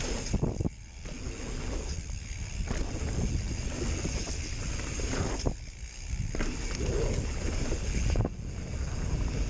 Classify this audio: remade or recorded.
recorded